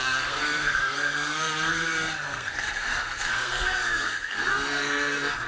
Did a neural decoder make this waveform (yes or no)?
yes